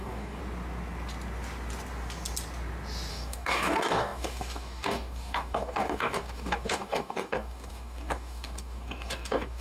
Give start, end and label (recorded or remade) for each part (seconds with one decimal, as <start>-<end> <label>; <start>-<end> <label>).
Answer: 0.0-0.4 remade; 0.4-3.1 recorded; 3.1-9.6 remade